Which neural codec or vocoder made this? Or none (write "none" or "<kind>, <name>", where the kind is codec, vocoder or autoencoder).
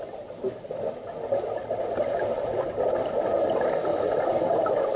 none